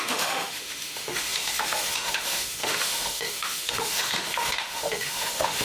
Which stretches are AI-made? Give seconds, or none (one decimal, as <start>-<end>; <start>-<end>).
0.0-5.6